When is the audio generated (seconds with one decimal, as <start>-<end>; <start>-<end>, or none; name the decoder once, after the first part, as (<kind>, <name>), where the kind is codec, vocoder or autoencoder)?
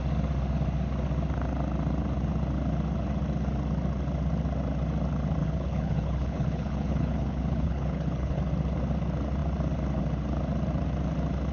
5.4-8.4 (codec, HILCodec)